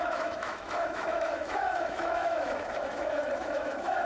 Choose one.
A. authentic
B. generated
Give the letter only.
B